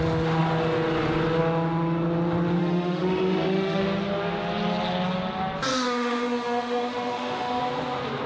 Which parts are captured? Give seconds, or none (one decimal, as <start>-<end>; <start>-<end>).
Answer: 0.0-2.6; 3.8-5.7; 7.6-8.3